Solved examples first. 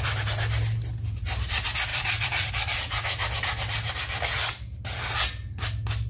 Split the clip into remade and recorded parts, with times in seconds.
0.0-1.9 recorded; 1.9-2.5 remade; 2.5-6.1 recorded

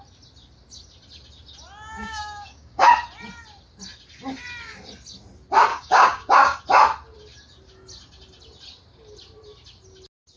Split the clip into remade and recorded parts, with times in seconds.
0.0-2.0 recorded; 2.0-2.9 remade; 2.9-5.7 recorded; 5.7-6.6 remade; 6.6-10.4 recorded

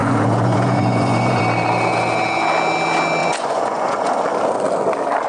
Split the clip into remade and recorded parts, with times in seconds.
0.0-1.4 remade; 1.4-3.2 recorded; 3.2-4.2 remade; 4.2-5.3 recorded